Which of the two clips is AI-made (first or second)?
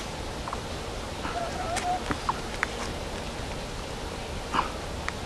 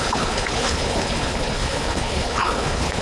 second